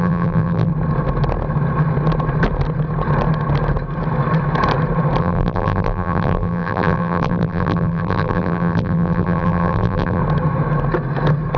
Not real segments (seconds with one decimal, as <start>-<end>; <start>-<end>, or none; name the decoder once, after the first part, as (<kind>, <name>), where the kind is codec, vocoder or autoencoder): 0.0-0.7 (vocoder, BigVGAN v2); 5.2-10.2